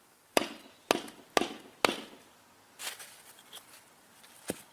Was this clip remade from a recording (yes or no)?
no